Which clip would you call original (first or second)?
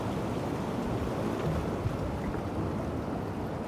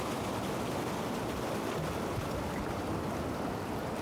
first